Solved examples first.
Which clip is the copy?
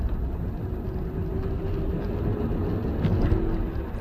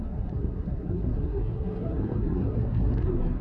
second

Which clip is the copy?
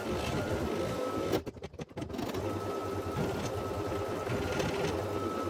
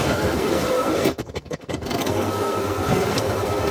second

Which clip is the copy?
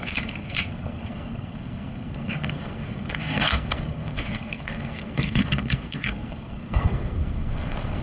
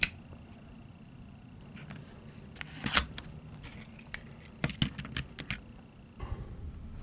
first